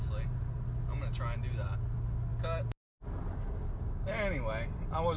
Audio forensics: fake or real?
real